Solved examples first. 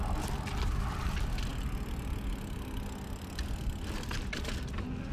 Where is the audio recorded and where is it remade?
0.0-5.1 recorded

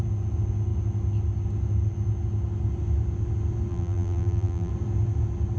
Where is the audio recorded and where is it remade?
0.0-3.7 recorded; 3.7-4.7 remade; 4.7-5.6 recorded

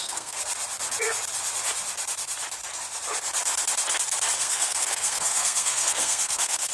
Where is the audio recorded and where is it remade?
0.0-0.4 remade; 0.4-4.4 recorded; 4.4-6.7 remade

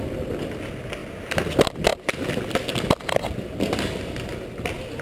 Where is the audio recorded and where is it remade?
0.0-1.0 recorded; 1.0-1.5 remade; 1.5-1.9 recorded; 1.9-2.7 remade; 2.7-5.0 recorded

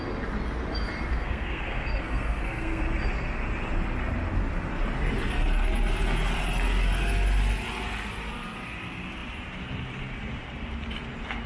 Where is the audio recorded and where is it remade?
0.0-1.1 recorded; 1.1-2.8 remade; 2.8-11.5 recorded

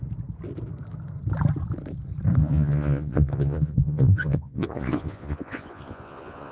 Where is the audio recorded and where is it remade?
0.0-2.4 recorded; 2.4-6.5 remade